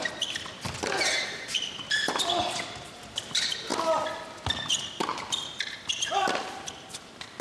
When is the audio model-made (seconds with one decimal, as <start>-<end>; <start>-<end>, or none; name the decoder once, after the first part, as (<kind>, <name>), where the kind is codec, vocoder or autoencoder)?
0.0-3.7 (vocoder, BigVGAN v2); 4.4-5.1; 6.0-7.4